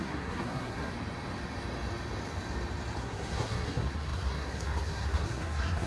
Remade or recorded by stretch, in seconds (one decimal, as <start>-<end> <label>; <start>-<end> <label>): 0.0-0.9 remade; 0.9-3.0 recorded; 3.0-5.9 remade